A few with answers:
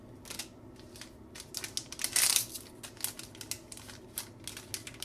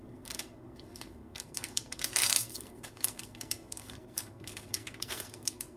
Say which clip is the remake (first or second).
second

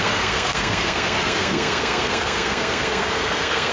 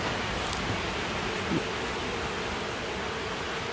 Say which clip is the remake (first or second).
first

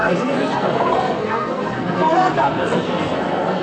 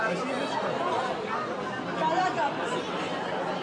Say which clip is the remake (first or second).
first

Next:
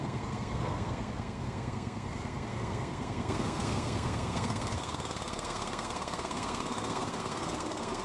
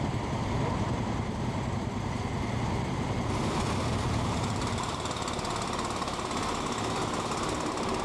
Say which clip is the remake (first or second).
first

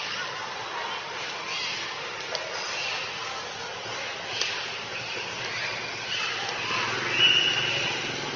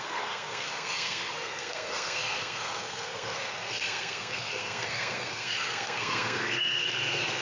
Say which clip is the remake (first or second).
second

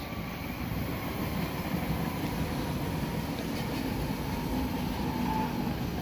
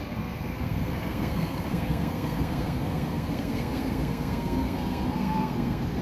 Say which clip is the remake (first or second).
second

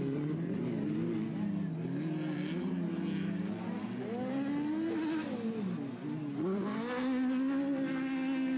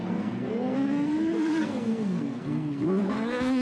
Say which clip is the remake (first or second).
second